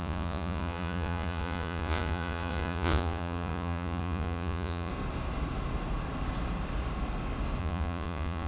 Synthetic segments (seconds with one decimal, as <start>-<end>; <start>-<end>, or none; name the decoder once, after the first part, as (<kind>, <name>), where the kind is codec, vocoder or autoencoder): 0.0-4.9 (vocoder, Vocos); 7.6-8.5